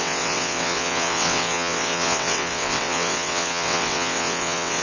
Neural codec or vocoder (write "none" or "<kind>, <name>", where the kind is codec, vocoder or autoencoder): vocoder, WaveNeXt